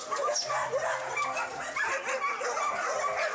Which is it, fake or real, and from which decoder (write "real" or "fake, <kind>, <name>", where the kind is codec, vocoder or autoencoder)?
real